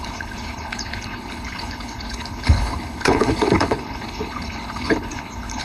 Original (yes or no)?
no